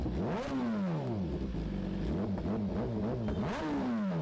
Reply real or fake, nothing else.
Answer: real